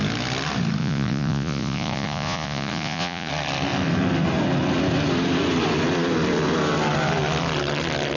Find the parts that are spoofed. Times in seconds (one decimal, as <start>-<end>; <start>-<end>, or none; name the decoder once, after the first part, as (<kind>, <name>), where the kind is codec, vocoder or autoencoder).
0.8-3.3 (vocoder, Vocos)